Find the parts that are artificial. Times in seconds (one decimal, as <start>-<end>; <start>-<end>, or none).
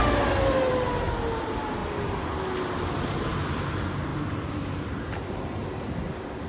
1.8-2.3; 4.1-4.9